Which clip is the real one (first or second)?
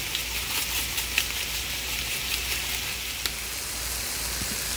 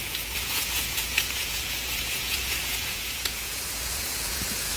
first